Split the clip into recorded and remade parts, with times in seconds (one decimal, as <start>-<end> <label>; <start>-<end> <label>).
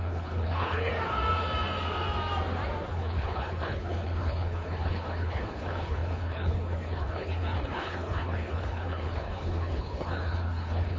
0.0-0.9 remade; 0.9-2.9 recorded; 2.9-11.0 remade